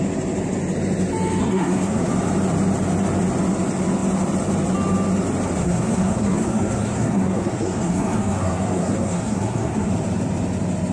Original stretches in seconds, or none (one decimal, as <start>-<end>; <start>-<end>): 0.0-1.4; 2.1-5.6; 9.9-10.9